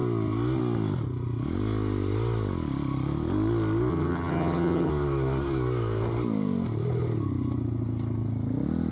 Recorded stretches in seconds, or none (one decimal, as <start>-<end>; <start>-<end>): 0.0-3.9; 4.9-8.9